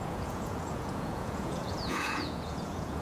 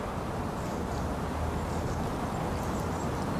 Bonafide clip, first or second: second